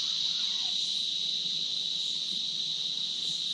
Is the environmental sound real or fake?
real